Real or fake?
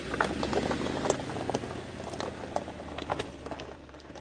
fake